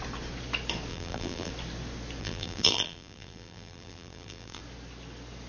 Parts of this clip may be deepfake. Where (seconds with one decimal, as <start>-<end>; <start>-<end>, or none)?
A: 0.9-1.5; 2.2-4.6